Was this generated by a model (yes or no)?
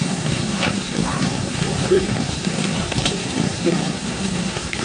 yes